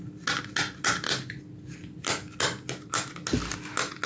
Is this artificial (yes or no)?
no